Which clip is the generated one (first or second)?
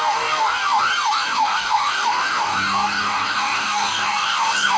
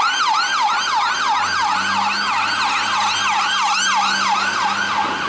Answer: first